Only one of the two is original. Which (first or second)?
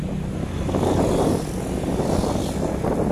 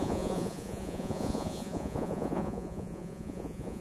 first